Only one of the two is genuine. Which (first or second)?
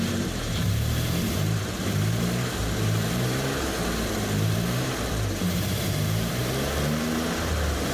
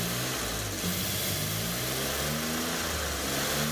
second